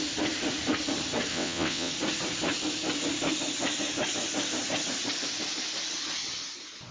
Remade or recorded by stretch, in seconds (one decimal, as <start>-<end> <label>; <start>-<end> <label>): 0.0-1.3 recorded; 1.3-1.9 remade; 1.9-6.9 recorded